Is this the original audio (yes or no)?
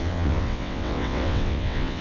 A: no